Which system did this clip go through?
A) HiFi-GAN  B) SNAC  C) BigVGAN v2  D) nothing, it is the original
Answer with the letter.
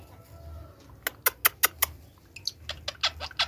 D